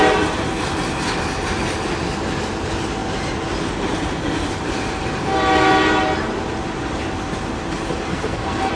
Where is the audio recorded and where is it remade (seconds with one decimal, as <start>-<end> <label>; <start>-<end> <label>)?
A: 0.0-8.1 recorded; 8.1-8.7 remade

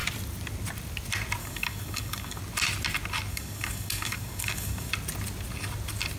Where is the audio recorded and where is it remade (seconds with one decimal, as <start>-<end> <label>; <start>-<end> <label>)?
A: 0.0-1.4 recorded; 1.4-2.4 remade; 2.4-3.3 recorded; 3.3-4.9 remade; 4.9-6.2 recorded

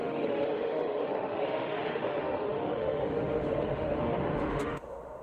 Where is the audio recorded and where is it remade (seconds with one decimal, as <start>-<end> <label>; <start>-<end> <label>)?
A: 0.0-5.2 remade

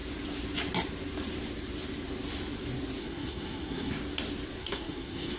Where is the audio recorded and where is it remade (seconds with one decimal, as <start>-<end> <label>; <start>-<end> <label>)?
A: 0.0-3.0 recorded; 3.0-3.9 remade; 3.9-4.6 recorded; 4.6-5.4 remade

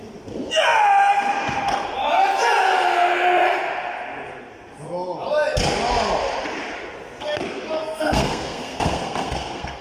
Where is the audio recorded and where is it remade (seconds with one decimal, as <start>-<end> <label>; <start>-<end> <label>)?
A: 0.0-7.8 recorded; 7.8-9.8 remade

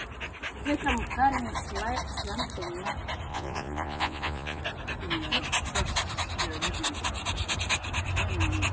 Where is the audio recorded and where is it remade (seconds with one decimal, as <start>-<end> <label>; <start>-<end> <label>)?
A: 0.0-3.3 recorded; 3.3-4.6 remade; 4.6-8.7 recorded

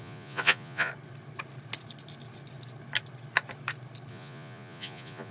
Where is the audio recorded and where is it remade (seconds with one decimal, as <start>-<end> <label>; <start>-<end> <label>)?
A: 0.0-0.9 remade; 0.9-4.1 recorded; 4.1-5.3 remade

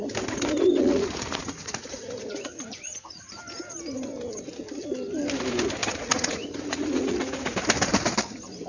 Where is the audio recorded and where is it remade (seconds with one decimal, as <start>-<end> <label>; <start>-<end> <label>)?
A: 0.0-0.8 recorded; 0.8-3.4 remade; 3.4-5.8 recorded; 5.8-7.5 remade; 7.5-8.7 recorded